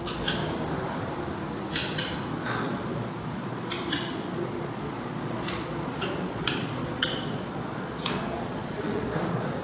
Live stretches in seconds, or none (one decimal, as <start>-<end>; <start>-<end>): 0.4-2.3